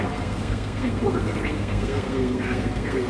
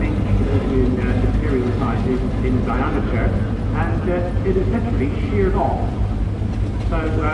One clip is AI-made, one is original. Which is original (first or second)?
second